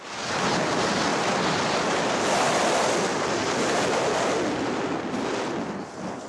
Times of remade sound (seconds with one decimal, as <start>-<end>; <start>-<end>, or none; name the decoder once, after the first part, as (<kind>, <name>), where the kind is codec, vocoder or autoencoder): none